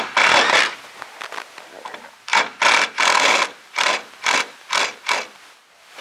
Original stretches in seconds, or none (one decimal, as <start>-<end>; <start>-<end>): 0.0-2.3; 2.9-3.7; 4.7-6.0